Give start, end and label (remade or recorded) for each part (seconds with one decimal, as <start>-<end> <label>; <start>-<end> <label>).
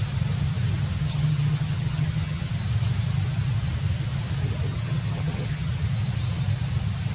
0.0-1.0 recorded; 1.0-2.5 remade; 2.5-4.7 recorded; 4.7-5.7 remade; 5.7-7.1 recorded